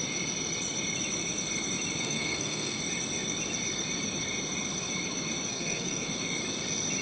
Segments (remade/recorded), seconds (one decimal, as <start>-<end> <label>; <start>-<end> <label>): 0.0-2.0 recorded; 2.0-2.8 remade; 2.8-5.5 recorded; 5.5-6.1 remade; 6.1-7.0 recorded